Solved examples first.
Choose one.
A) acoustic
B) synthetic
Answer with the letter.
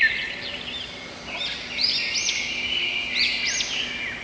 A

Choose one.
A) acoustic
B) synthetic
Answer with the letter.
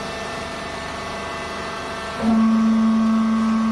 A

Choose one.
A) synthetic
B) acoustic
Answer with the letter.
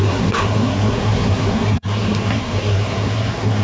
A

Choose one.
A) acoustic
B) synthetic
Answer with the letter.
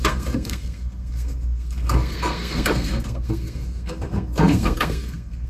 B